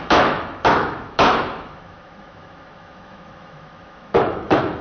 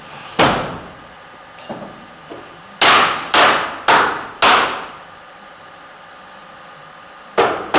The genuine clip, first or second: second